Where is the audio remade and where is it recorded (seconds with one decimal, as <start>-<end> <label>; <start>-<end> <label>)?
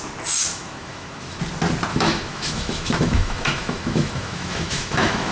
0.0-0.5 recorded; 0.5-1.4 remade; 1.4-1.9 recorded; 1.9-5.3 remade